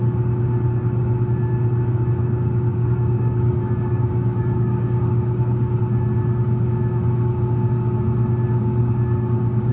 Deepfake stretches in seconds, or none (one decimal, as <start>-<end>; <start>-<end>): 2.7-5.8; 8.6-9.7